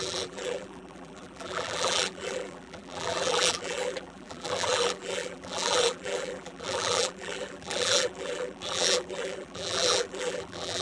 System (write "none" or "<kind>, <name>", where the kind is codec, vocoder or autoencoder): vocoder, BigVGAN v2